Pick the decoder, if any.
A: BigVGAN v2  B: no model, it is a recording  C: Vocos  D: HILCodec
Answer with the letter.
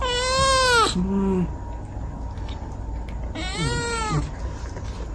B